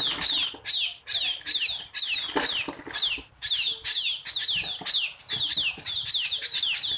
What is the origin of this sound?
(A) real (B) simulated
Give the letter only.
A